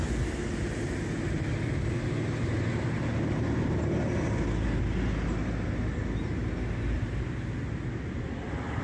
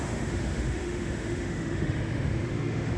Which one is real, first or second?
first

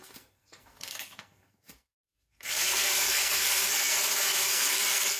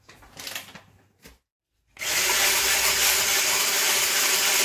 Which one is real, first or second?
second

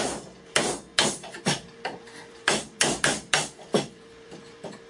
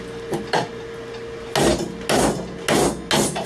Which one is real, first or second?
second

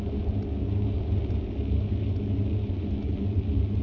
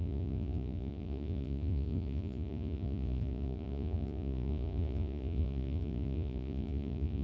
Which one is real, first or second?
first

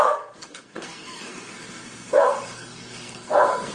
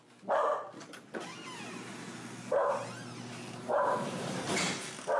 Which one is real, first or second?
second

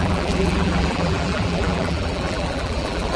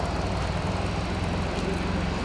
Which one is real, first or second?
second